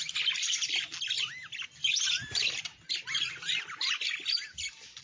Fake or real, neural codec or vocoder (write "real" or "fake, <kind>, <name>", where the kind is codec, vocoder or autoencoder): real